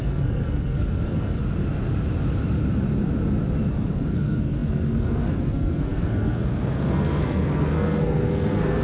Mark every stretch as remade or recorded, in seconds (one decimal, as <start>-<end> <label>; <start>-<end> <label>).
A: 0.0-1.4 remade; 1.4-3.7 recorded; 3.7-8.8 remade